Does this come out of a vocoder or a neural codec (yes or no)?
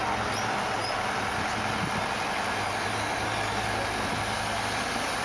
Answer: no